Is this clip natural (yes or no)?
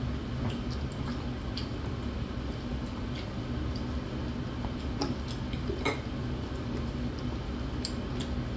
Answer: yes